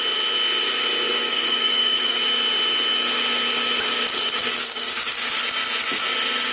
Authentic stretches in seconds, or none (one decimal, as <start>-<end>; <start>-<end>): 0.0-1.2; 2.2-4.4; 5.4-6.5